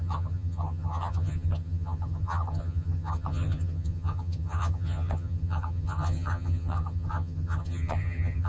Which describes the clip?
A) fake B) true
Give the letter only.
A